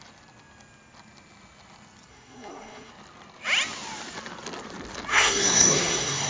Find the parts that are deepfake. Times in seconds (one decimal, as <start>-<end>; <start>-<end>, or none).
2.1-2.9; 5.1-6.3